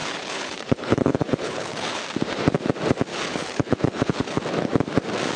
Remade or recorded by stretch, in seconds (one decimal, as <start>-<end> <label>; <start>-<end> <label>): 0.0-2.0 remade; 2.0-3.1 recorded; 3.1-4.4 remade; 4.4-5.4 recorded